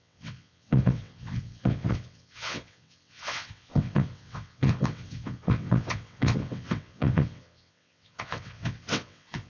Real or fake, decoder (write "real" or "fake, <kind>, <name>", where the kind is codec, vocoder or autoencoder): fake, vocoder, WaveNeXt